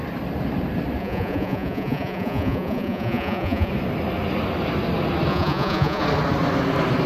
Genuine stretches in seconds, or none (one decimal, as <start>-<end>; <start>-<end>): 0.0-1.0; 3.7-5.3; 6.0-7.1